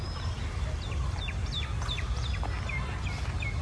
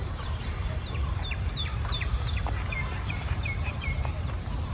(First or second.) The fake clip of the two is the second